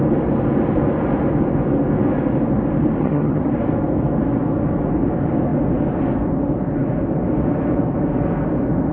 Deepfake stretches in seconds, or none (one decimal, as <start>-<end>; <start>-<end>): 3.0-3.5